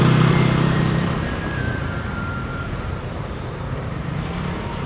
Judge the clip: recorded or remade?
remade